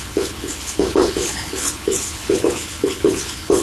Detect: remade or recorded remade